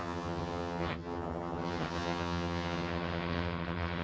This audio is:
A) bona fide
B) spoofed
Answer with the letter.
B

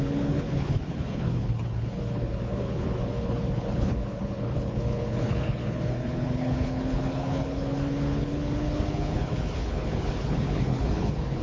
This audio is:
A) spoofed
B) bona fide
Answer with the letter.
A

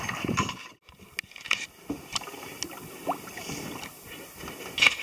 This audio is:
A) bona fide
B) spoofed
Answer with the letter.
A